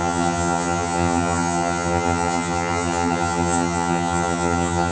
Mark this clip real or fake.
fake